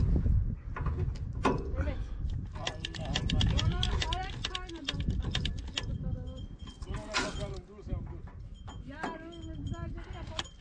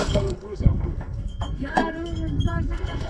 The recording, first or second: first